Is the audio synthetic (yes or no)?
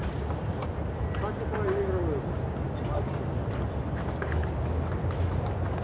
no